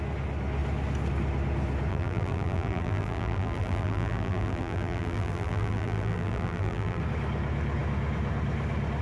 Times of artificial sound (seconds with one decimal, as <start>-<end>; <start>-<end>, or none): 1.9-7.0